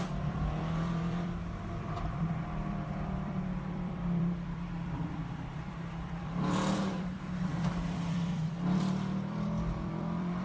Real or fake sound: fake